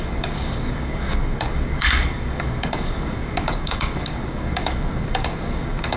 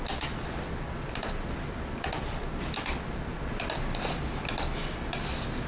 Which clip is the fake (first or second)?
first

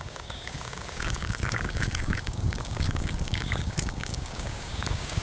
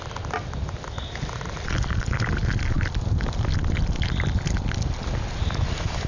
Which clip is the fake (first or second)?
first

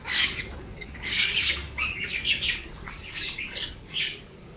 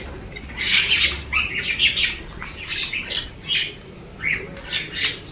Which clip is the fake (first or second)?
first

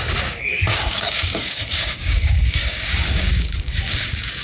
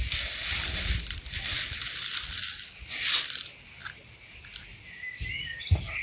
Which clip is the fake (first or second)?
first